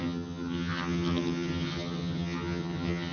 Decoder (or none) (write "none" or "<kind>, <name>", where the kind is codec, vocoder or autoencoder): vocoder, HiFi-GAN